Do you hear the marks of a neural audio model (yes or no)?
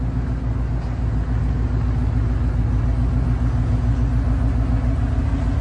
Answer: no